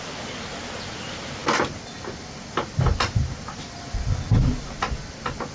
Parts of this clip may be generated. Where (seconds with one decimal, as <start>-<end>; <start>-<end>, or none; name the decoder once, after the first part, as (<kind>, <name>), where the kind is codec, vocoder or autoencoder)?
none

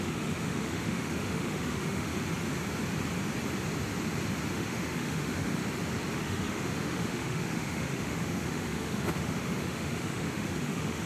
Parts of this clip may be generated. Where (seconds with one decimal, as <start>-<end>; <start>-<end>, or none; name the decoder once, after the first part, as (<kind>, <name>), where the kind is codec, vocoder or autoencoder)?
0.0-2.1 (autoencoder, DAC-VAE); 4.5-5.6; 6.1-11.1

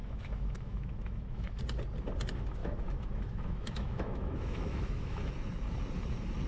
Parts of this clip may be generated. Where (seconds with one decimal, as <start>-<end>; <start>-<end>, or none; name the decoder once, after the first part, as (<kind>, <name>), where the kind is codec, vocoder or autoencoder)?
0.0-1.6 (autoencoder, DAC-VAE); 2.6-5.3

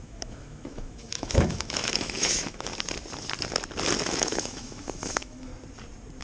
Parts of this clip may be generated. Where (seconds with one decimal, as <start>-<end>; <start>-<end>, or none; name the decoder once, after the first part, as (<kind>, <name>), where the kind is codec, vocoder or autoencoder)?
0.0-2.7 (autoencoder, DAC-VAE); 4.0-5.5

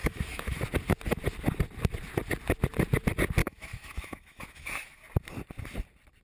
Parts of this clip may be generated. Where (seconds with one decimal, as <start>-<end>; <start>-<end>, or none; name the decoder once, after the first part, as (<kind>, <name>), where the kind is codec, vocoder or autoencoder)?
0.0-0.6 (autoencoder, DAC-VAE); 3.4-5.0